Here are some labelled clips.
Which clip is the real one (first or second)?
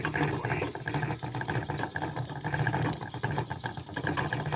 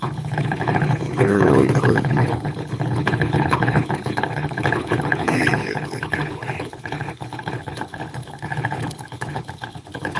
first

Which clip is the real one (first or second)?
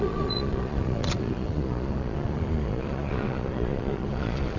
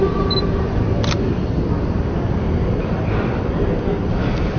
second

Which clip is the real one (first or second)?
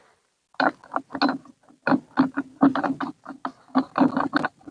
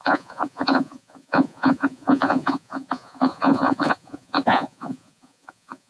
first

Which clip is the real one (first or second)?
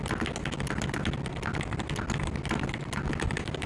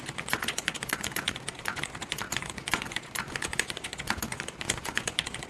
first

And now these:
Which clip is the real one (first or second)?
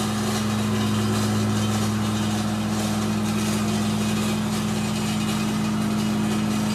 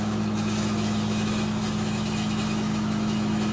first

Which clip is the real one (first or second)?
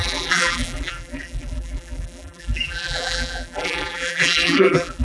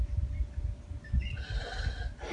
second